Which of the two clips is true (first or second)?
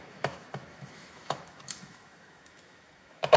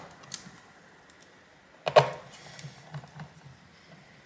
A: second